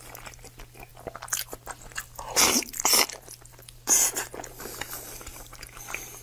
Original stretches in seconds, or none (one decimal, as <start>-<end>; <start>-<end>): 0.0-5.3; 5.8-6.2